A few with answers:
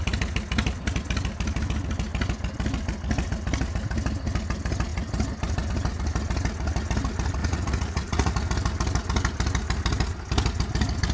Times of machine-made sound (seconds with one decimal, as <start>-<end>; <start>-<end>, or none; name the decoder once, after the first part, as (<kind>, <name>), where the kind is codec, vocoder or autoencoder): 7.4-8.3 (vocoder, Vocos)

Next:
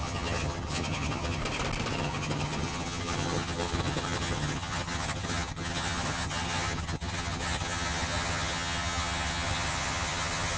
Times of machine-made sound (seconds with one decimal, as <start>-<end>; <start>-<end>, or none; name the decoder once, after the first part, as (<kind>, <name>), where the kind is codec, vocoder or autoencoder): 0.0-1.4 (vocoder, HiFi-GAN); 1.9-10.6

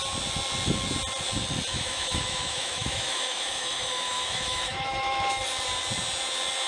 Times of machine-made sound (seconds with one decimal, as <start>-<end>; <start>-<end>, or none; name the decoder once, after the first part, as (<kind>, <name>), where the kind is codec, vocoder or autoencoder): 1.7-5.4 (autoencoder, DAC-VAE)